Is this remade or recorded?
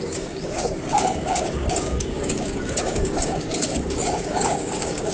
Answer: remade